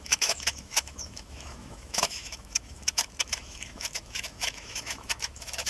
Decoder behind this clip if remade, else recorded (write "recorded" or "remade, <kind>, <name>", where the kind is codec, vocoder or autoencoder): remade, autoencoder, DAC-VAE